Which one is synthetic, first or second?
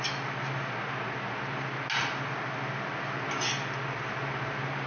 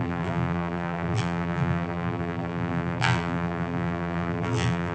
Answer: second